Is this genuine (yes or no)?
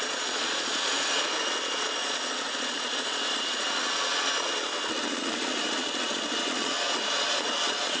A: no